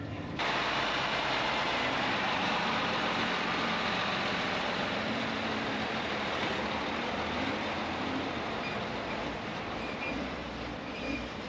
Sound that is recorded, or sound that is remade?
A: remade